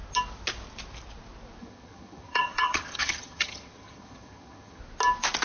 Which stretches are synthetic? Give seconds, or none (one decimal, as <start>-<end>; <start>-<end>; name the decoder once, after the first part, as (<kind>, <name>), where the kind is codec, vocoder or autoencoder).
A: 1.6-4.8 (vocoder, HiFi-GAN)